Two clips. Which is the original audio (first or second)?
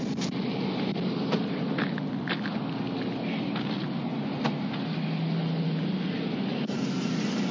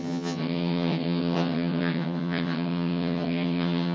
first